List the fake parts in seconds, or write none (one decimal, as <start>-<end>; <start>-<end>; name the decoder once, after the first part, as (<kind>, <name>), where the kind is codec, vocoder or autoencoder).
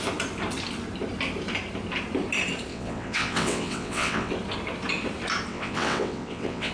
2.7-4.3 (vocoder, WaveNeXt); 5.5-6.7